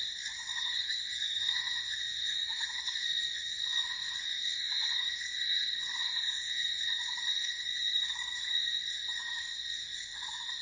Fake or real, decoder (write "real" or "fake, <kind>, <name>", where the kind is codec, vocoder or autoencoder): fake, codec, SNAC